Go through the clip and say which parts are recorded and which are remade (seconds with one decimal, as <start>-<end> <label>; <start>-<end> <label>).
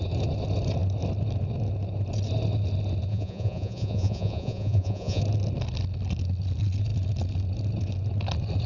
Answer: 0.0-3.1 recorded; 3.1-5.2 remade; 5.2-8.7 recorded